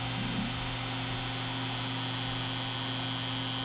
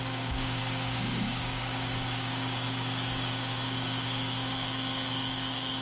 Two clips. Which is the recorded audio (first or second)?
first